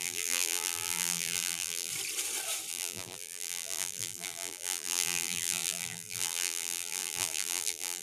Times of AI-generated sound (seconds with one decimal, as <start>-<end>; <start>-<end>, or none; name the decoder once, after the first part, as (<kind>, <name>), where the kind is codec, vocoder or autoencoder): 0.0-1.9 (vocoder, BigVGAN v2); 2.7-8.0